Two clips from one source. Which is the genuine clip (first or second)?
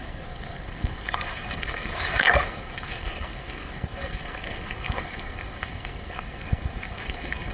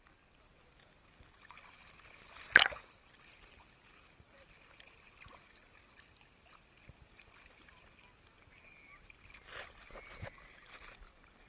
second